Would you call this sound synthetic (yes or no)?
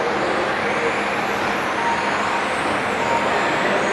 no